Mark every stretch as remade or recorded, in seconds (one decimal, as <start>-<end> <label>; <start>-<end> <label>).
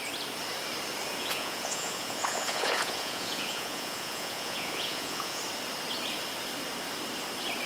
0.0-1.2 recorded; 1.2-5.4 remade; 5.4-7.7 recorded